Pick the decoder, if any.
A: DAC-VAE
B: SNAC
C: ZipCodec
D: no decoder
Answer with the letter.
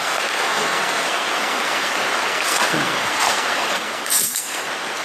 B